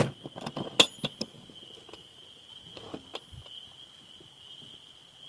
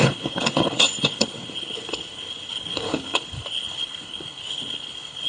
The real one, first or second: first